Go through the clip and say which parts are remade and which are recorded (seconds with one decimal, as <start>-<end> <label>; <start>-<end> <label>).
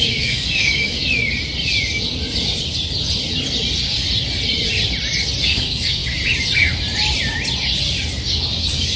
0.0-1.0 remade; 1.0-5.4 recorded; 5.4-6.0 remade; 6.0-8.3 recorded; 8.3-9.0 remade